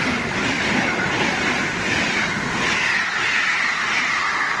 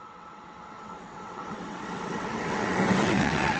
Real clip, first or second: first